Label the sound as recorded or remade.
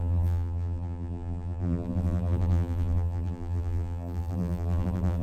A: remade